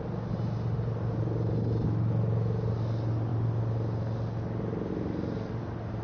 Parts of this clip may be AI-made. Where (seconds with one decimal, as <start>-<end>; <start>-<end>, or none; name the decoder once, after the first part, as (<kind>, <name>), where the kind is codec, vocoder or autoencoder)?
none